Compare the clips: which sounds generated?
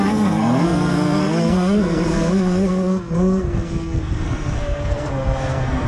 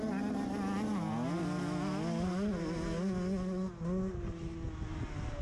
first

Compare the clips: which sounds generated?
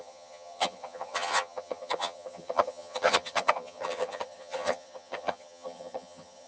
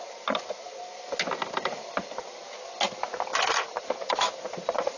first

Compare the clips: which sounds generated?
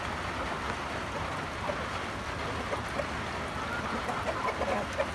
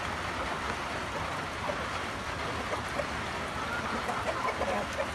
second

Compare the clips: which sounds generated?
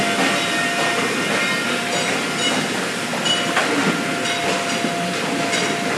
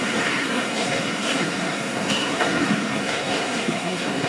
second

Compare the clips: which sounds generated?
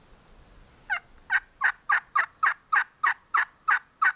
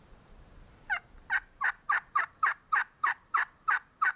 second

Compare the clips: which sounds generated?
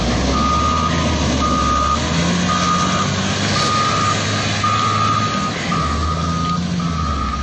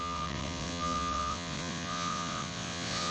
second